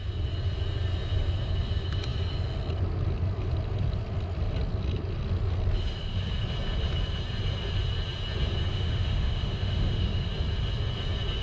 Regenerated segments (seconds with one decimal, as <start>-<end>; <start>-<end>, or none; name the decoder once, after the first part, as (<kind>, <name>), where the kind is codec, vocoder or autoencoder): 8.7-10.3 (autoencoder, DAC-VAE)